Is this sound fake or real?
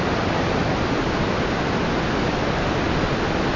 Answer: real